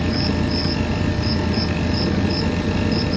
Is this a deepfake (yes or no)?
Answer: no